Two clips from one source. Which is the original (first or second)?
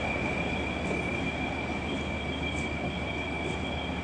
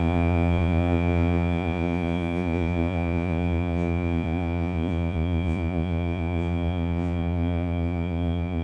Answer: first